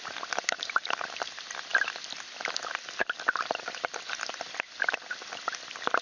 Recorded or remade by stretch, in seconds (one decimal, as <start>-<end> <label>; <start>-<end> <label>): 0.0-6.0 recorded